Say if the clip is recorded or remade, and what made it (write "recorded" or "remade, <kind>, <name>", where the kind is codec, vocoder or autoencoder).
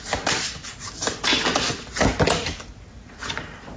recorded